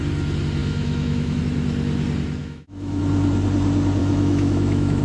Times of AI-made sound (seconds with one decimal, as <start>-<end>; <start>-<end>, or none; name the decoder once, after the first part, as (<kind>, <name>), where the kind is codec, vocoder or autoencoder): 0.6-1.4 (autoencoder, DAC-VAE); 2.4-3.0; 4.0-5.0